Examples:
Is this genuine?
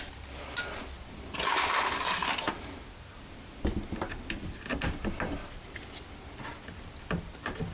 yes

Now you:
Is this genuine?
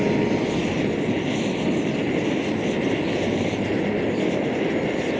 yes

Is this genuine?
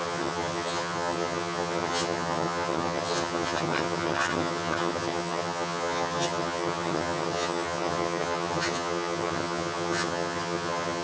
no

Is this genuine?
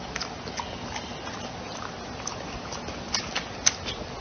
yes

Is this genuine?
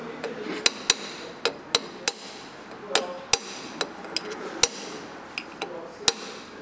yes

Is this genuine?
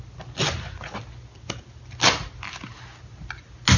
yes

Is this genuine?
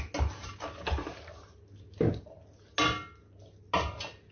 yes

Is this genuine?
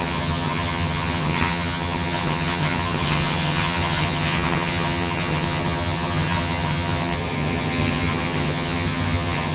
no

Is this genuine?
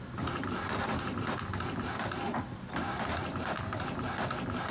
yes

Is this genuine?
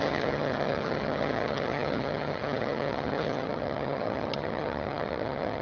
no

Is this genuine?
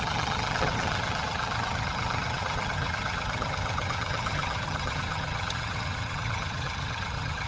no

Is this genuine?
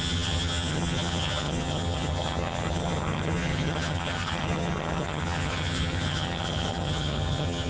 no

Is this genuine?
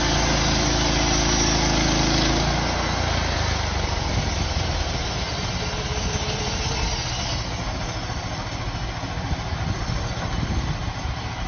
yes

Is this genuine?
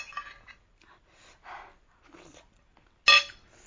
yes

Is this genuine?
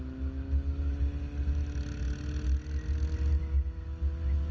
yes